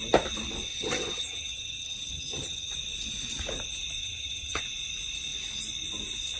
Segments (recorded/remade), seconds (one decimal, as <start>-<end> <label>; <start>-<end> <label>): 0.0-0.7 recorded; 0.7-2.7 remade; 2.7-4.0 recorded; 4.0-4.6 remade; 4.6-6.4 recorded